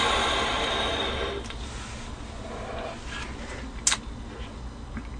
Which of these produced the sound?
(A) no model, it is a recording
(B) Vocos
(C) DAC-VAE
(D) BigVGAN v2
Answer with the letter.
A